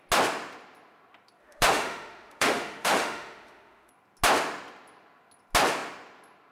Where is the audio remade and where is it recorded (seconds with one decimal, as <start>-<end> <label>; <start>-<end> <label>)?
0.0-1.4 recorded; 1.4-3.9 remade; 3.9-6.5 recorded